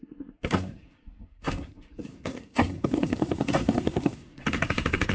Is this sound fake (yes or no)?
yes